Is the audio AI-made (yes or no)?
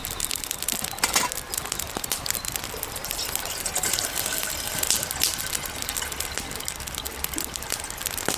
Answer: no